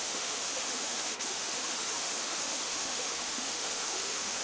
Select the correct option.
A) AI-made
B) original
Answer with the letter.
A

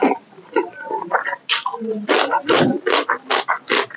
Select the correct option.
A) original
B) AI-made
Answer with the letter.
A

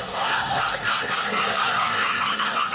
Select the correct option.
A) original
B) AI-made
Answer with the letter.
B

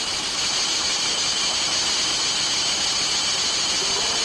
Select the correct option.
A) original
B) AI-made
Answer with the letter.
A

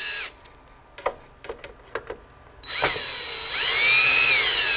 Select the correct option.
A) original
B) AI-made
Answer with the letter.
A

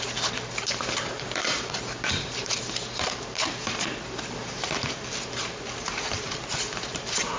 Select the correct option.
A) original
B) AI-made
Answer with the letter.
B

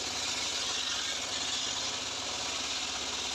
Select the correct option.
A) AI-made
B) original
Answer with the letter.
B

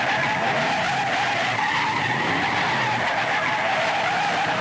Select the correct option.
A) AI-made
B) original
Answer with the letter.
B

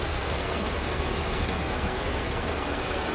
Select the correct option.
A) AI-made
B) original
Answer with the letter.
A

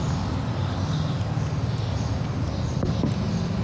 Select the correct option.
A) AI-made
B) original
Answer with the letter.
B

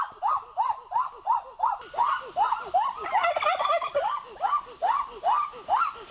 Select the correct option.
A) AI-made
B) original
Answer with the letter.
B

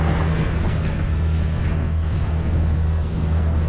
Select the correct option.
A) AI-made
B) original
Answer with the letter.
A